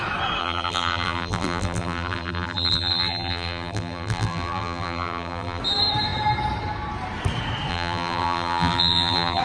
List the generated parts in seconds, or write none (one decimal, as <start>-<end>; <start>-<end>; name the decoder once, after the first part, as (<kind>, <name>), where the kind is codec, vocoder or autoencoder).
0.4-5.6 (vocoder, BigVGAN v2); 7.7-9.4